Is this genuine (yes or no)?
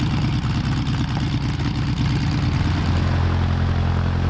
yes